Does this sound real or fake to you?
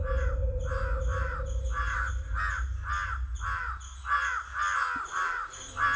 real